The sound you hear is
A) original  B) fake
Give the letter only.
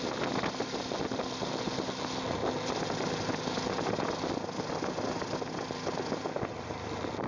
A